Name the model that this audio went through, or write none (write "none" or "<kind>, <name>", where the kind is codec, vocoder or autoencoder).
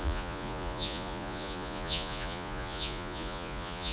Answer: vocoder, Vocos